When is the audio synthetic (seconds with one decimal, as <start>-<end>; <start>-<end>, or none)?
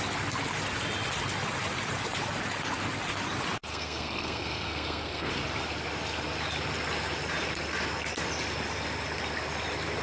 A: 3.7-5.3